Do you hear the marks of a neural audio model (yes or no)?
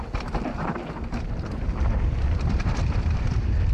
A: yes